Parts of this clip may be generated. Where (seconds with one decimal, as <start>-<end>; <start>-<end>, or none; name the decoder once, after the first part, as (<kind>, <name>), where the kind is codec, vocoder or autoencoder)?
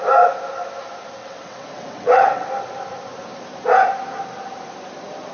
1.2-2.5 (vocoder, WaveNeXt)